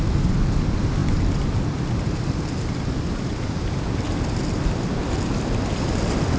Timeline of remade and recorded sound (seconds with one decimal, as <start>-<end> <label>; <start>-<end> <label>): 0.0-6.4 recorded